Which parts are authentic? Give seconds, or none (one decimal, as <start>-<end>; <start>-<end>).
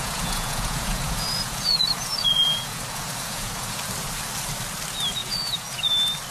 3.8-5.2; 5.8-6.3